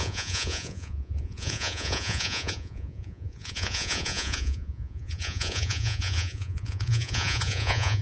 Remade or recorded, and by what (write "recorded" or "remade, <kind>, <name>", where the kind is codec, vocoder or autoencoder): remade, vocoder, Vocos